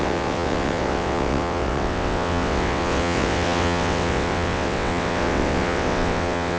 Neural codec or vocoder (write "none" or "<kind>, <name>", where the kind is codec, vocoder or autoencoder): vocoder, WaveNeXt